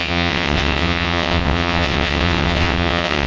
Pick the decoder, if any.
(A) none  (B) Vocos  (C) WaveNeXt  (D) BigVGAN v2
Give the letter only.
C